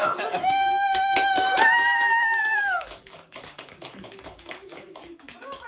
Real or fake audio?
fake